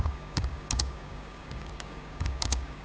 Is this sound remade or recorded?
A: remade